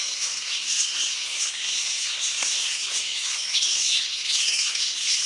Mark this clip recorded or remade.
remade